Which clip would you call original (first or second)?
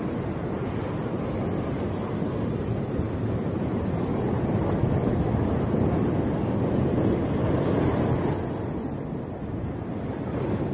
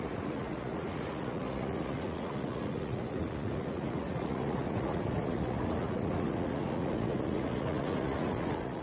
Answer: first